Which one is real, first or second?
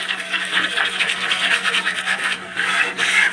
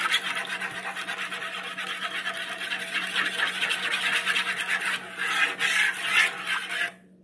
second